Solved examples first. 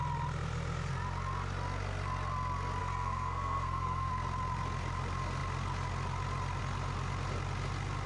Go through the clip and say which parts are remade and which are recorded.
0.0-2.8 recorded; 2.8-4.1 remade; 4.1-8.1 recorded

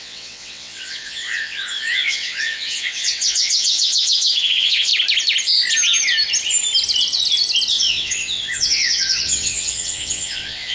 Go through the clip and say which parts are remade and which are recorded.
0.0-4.9 remade; 4.9-7.7 recorded; 7.7-10.7 remade